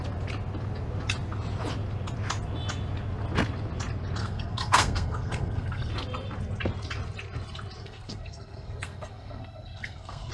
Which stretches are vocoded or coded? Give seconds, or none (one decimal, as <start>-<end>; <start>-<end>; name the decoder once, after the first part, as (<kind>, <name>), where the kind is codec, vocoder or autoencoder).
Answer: 4.2-5.9 (codec, SNAC); 7.8-10.3